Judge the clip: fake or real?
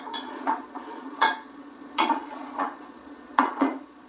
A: fake